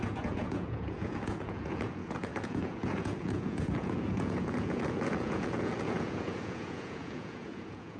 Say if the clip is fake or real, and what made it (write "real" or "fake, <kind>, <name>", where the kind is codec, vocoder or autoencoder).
fake, vocoder, Vocos